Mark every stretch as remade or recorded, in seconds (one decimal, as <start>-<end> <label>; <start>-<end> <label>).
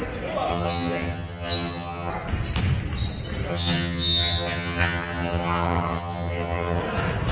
0.0-0.5 recorded; 0.5-2.1 remade; 2.1-3.5 recorded; 3.5-6.8 remade; 6.8-7.3 recorded